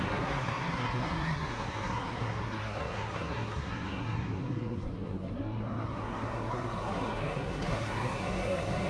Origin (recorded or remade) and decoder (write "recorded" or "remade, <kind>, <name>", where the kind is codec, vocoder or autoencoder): remade, codec, SNAC